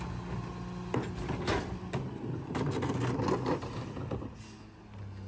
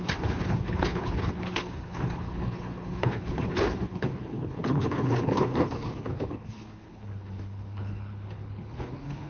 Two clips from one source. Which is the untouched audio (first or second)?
first